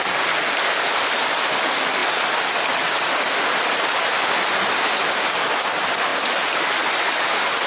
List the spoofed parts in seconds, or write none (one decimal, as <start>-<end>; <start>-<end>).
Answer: none